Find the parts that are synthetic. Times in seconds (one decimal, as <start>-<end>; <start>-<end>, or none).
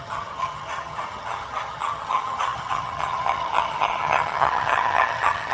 0.0-5.5